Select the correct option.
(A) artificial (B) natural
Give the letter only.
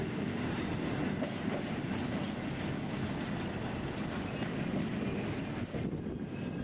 B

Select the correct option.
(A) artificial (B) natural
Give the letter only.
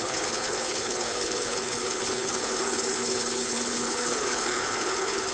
A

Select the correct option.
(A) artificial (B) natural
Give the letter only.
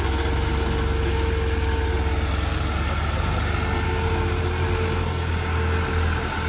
B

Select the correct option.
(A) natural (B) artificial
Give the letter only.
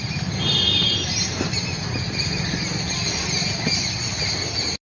A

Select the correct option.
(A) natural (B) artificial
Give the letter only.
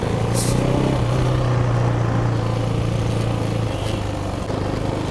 A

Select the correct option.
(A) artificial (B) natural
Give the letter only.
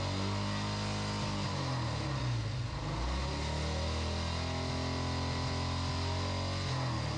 B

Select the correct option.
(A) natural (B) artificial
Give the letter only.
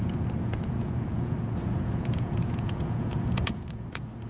B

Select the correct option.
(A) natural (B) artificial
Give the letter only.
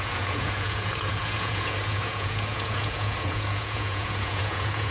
B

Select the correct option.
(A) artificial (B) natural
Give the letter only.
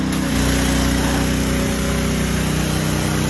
B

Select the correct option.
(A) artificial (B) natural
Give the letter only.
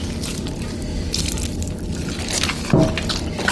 B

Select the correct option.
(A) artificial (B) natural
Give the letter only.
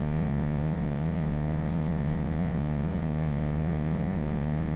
A